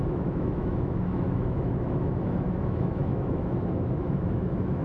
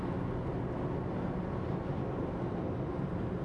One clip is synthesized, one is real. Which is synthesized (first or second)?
first